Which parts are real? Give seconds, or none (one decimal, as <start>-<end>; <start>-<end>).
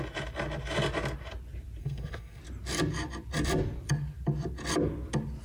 0.0-1.8; 2.4-5.4